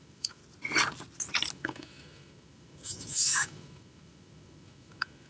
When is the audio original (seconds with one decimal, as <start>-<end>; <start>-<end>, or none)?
0.4-1.5